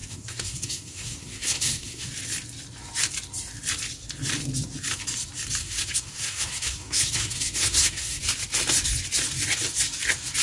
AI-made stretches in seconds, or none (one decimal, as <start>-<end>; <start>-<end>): 0.0-2.1; 5.6-8.2

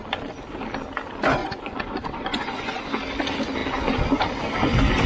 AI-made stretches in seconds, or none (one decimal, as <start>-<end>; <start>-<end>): 1.4-2.8

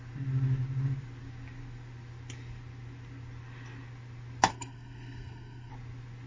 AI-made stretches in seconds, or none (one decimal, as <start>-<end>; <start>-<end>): 4.5-5.7

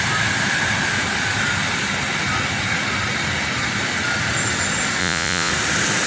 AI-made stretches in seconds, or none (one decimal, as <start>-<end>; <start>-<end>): 5.0-5.5

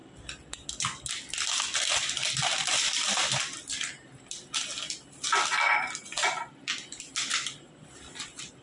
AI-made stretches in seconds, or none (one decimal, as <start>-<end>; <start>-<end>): none